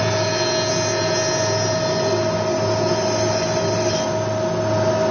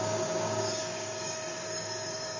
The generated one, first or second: second